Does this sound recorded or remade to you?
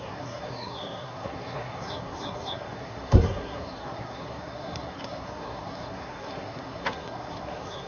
remade